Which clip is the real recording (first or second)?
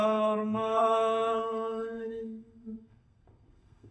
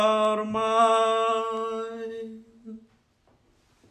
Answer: second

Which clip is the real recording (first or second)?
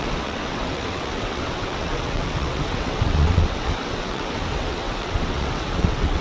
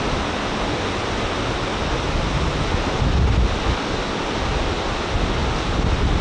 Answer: second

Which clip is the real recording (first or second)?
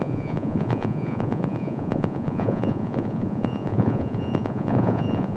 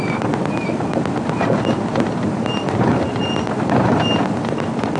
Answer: second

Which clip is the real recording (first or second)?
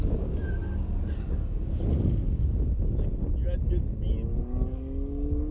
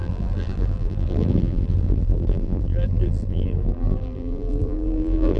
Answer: first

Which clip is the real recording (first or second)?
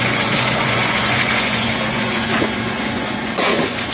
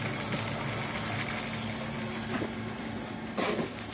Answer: second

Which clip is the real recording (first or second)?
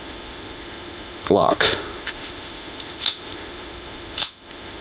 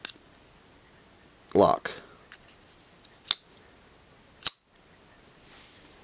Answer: second